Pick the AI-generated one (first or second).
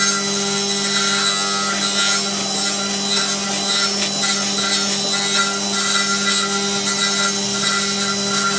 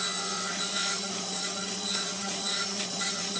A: second